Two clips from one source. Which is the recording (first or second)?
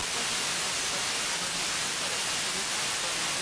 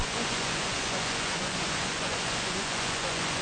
first